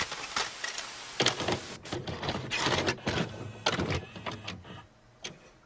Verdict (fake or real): real